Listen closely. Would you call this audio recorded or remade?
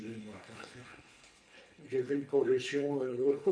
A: remade